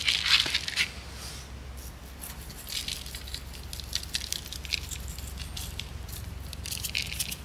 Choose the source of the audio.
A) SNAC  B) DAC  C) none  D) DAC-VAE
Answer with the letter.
C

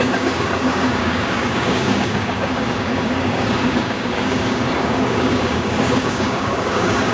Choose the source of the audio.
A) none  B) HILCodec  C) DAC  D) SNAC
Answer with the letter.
C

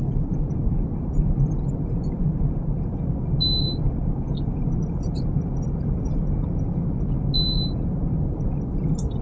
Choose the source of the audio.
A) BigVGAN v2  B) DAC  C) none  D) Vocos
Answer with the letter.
C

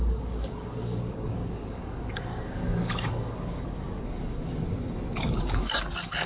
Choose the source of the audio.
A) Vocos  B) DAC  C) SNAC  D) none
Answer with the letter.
B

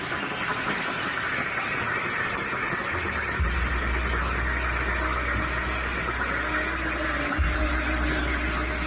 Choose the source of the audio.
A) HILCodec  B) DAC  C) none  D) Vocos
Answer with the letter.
C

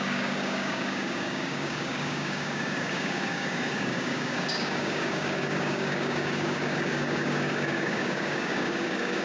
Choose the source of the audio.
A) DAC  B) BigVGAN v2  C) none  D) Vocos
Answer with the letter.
A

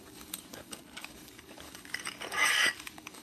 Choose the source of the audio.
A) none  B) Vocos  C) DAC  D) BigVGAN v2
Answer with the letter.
C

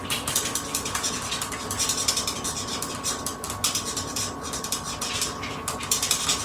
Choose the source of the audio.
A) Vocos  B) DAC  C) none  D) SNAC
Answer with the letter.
C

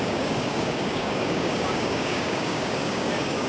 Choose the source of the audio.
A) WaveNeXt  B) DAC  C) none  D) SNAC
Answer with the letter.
B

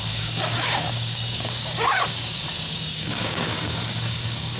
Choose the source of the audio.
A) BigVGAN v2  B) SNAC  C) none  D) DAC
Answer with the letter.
D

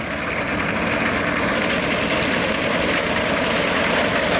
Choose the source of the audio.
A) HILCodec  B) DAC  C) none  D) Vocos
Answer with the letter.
C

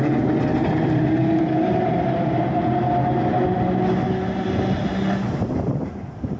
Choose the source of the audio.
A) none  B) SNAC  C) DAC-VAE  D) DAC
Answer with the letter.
A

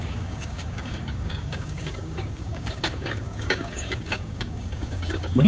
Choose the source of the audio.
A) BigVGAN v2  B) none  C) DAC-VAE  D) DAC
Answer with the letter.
D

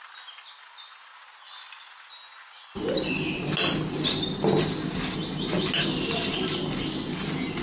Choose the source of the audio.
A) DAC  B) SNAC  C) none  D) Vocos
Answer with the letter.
C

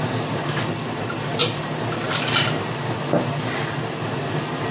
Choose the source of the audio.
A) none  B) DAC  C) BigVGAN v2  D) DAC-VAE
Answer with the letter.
A